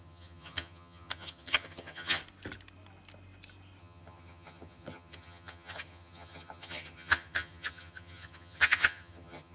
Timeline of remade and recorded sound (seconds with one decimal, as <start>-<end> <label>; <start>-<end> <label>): 0.0-2.2 remade; 2.2-3.8 recorded; 3.8-9.5 remade

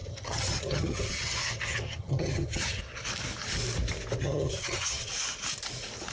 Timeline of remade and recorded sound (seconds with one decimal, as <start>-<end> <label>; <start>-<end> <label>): 0.0-2.8 remade; 2.8-4.2 recorded; 4.2-5.1 remade; 5.1-6.1 recorded

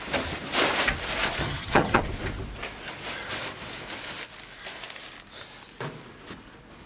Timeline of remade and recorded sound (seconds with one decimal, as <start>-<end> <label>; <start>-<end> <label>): 0.0-1.4 recorded; 1.4-2.0 remade; 2.0-6.9 recorded

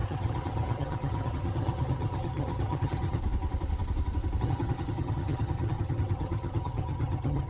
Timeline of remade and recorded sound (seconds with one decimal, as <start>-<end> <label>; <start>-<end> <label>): 0.0-3.2 remade; 3.2-4.4 recorded; 4.4-7.5 remade

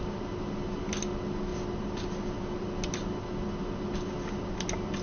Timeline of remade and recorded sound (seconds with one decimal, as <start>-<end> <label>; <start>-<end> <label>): 0.0-5.0 recorded

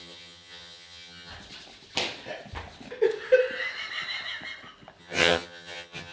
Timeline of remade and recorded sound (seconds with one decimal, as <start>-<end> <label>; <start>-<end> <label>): 0.0-1.3 remade; 1.3-5.0 recorded; 5.0-6.1 remade